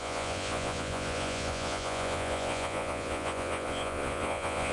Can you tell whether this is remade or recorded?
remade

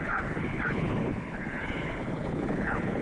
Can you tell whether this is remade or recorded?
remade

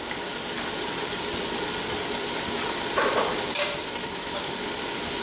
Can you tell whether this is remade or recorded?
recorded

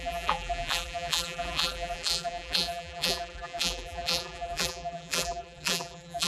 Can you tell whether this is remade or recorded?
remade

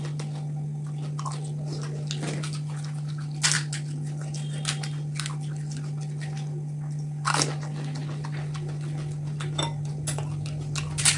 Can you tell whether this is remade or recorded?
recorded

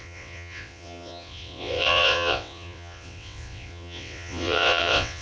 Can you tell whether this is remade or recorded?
remade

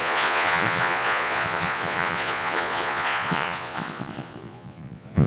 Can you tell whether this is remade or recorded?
remade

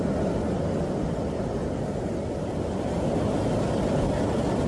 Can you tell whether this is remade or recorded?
recorded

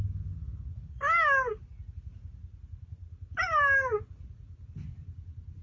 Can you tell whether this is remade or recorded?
recorded